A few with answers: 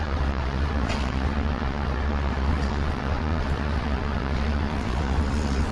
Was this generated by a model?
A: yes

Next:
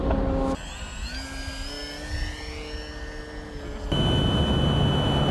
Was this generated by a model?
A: no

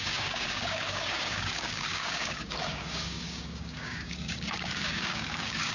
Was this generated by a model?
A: yes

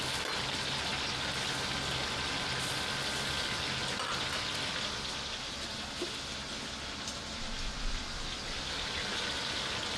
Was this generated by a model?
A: no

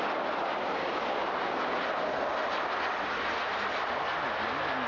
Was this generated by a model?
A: no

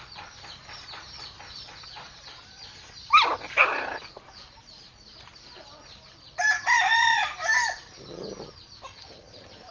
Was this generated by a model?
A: no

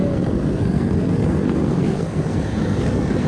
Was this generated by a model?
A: yes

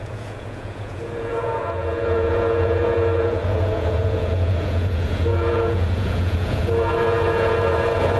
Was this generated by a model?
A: yes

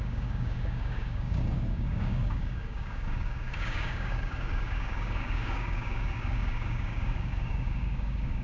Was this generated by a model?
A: yes